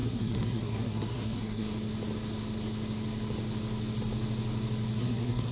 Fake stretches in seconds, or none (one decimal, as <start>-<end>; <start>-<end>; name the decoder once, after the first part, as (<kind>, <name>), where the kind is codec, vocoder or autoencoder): 0.0-1.7 (codec, SNAC); 5.0-5.5